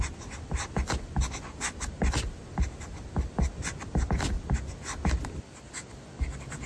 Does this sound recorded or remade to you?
recorded